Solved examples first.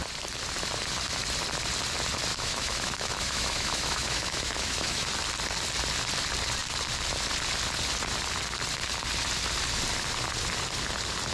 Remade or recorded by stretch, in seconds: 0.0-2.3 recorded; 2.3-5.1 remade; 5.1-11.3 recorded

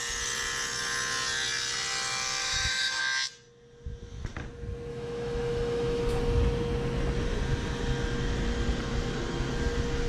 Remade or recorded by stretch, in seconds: 0.0-2.4 recorded; 2.4-3.0 remade; 3.0-4.9 recorded; 4.9-6.0 remade; 6.0-10.1 recorded

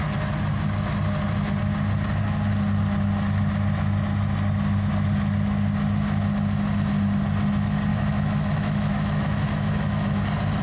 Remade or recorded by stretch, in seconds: 0.0-7.9 recorded; 7.9-10.2 remade; 10.2-10.6 recorded

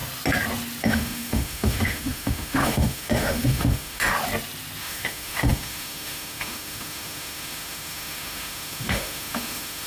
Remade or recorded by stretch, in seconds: 0.0-0.8 recorded; 0.8-4.1 remade; 4.1-4.8 recorded; 4.8-9.9 remade

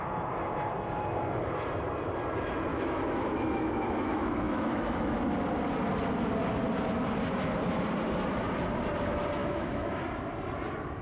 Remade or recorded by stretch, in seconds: 0.0-2.7 recorded; 2.7-5.2 remade; 5.2-9.4 recorded; 9.4-10.0 remade; 10.0-11.0 recorded

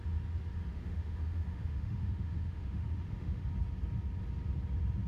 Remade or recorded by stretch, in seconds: 0.0-0.7 recorded; 0.7-3.4 remade; 3.4-5.1 recorded